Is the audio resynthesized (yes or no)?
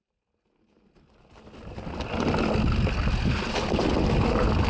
no